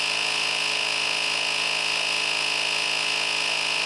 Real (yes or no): no